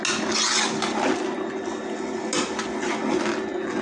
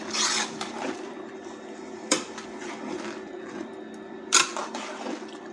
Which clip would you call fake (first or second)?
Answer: second